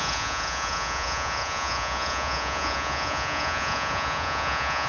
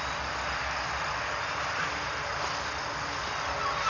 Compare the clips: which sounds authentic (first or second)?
second